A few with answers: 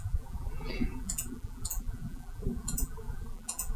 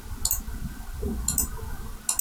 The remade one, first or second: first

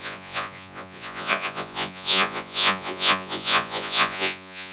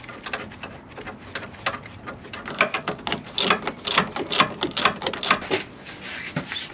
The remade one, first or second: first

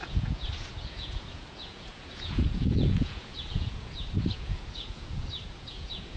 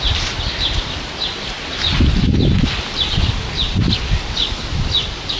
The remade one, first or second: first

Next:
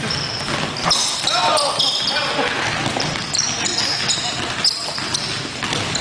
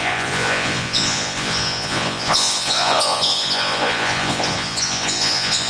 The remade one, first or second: second